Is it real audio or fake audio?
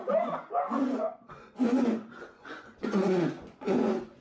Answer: fake